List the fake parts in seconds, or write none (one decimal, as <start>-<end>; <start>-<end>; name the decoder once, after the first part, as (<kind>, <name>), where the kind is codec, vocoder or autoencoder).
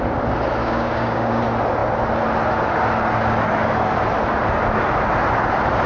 0.6-1.4 (codec, DAC)